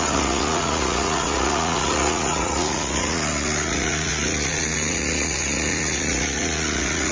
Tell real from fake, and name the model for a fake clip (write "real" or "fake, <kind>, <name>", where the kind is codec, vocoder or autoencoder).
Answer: fake, vocoder, Vocos